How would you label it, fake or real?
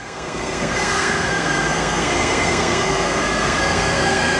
fake